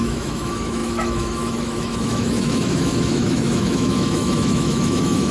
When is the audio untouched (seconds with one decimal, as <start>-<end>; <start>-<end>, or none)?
none